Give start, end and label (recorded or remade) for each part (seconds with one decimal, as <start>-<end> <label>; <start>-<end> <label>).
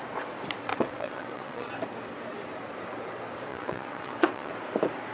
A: 0.0-0.7 recorded; 0.7-1.7 remade; 1.7-3.5 recorded; 3.5-4.5 remade; 4.5-5.1 recorded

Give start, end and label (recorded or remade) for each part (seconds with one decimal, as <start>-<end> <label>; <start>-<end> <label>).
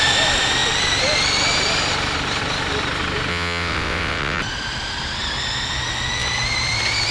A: 0.0-3.3 recorded; 3.3-4.4 remade; 4.4-7.1 recorded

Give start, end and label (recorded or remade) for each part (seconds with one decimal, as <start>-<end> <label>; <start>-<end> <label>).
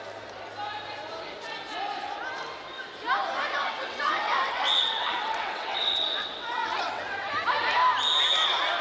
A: 0.0-3.6 recorded; 3.6-7.3 remade; 7.3-8.8 recorded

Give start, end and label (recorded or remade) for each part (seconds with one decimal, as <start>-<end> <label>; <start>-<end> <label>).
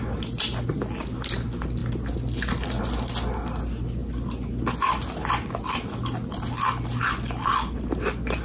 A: 0.0-8.4 recorded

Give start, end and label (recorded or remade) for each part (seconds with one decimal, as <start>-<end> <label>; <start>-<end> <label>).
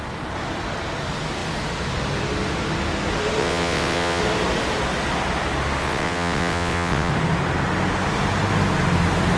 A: 0.0-3.4 recorded; 3.4-4.2 remade; 4.2-5.8 recorded; 5.8-7.1 remade; 7.1-9.4 recorded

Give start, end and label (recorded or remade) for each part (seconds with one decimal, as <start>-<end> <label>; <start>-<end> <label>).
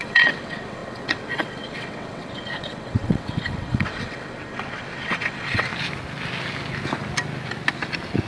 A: 0.0-5.7 remade; 5.7-8.3 recorded